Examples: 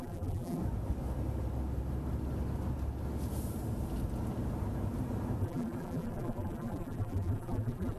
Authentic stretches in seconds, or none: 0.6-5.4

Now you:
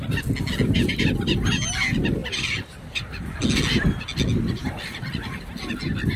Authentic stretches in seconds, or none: 0.0-6.2